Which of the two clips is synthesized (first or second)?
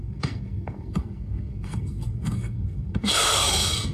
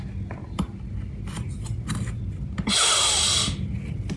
first